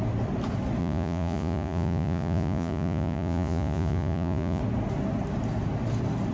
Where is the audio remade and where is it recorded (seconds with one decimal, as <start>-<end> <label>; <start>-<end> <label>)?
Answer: 0.0-0.8 recorded; 0.8-4.6 remade; 4.6-6.3 recorded